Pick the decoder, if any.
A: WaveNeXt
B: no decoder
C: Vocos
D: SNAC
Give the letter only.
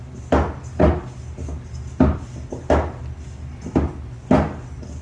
B